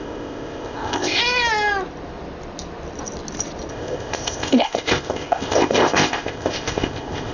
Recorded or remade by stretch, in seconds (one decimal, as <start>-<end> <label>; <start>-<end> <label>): 0.0-1.2 remade; 1.2-3.7 recorded; 3.7-7.3 remade